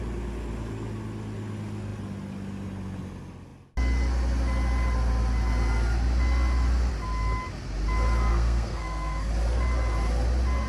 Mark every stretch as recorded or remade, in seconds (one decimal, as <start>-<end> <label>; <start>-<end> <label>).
0.0-8.3 recorded; 8.3-9.3 remade; 9.3-10.7 recorded